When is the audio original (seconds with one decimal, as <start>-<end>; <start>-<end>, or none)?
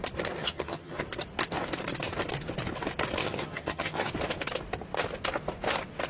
0.0-0.4; 1.0-3.2; 4.1-6.1